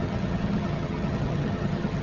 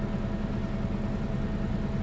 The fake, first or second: first